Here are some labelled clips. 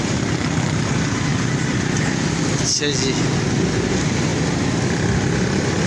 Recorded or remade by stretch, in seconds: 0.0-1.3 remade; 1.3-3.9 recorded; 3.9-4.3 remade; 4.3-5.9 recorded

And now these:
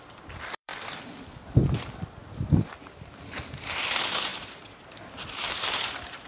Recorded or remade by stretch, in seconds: 0.0-0.7 remade; 0.7-2.5 recorded; 2.5-6.3 remade

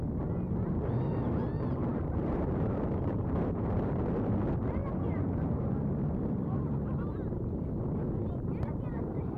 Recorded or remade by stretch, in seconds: 0.0-1.9 recorded; 1.9-3.9 remade; 3.9-4.8 recorded; 4.8-7.6 remade; 7.6-9.4 recorded

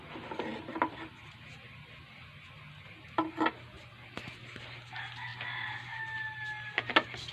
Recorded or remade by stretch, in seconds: 0.0-7.3 recorded

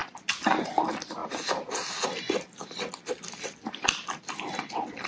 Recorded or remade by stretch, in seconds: 0.0-0.6 recorded; 0.6-1.2 remade; 1.2-3.2 recorded; 3.2-5.1 remade

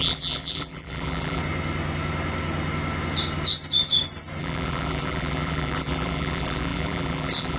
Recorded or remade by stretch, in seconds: 0.0-1.4 remade; 1.4-4.4 recorded; 4.4-7.6 remade